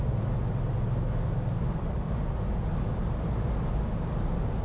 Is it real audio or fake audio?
real